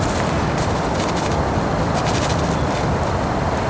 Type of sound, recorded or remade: recorded